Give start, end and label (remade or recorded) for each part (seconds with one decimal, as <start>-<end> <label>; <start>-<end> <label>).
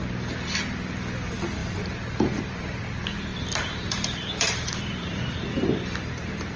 0.0-1.6 recorded; 1.6-2.8 remade; 2.8-3.3 recorded; 3.3-6.1 remade; 6.1-6.6 recorded